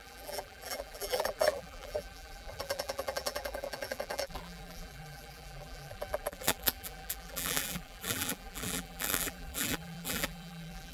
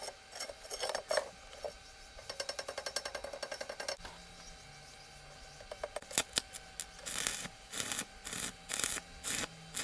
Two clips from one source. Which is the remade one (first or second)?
first